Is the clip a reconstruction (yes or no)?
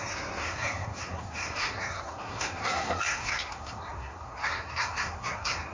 yes